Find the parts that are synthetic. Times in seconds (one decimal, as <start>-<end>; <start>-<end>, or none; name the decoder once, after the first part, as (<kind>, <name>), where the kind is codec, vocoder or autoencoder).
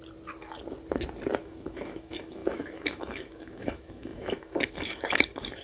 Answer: 1.4-5.6 (autoencoder, DAC-VAE)